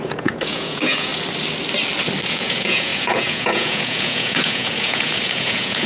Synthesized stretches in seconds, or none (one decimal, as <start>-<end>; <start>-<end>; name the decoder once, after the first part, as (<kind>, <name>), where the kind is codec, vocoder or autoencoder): 0.0-1.1 (vocoder, Vocos); 2.3-5.9